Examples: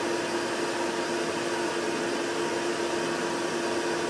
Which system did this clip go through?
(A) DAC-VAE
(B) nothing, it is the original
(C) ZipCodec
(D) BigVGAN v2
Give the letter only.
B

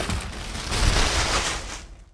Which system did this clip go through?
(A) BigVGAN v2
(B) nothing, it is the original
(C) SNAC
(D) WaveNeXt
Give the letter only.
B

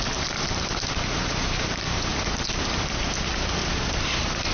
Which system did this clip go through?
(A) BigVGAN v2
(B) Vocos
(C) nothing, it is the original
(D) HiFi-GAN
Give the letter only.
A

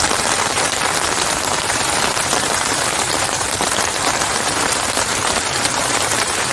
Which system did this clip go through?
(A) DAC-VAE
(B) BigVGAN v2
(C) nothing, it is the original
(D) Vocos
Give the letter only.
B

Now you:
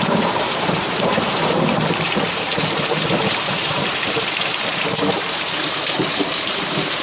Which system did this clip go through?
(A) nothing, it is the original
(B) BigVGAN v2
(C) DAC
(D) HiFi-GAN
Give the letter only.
B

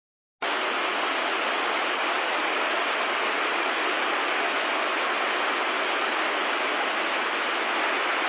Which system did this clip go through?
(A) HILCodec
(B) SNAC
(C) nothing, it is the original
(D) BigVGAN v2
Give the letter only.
C